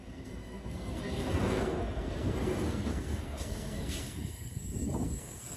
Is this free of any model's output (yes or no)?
no